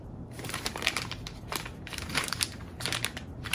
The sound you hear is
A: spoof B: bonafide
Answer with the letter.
A